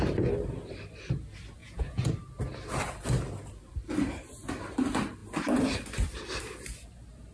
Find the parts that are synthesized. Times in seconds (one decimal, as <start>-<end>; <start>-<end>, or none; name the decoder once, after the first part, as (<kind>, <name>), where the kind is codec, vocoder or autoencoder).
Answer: 1.6-2.1 (vocoder, Vocos)